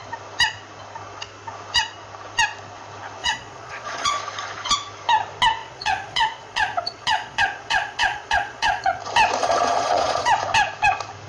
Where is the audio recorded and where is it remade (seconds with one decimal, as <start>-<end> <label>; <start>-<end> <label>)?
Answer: 0.0-3.2 recorded; 3.2-4.2 remade; 4.2-5.6 recorded; 5.6-9.0 remade; 9.0-9.4 recorded; 9.4-10.3 remade; 10.3-11.3 recorded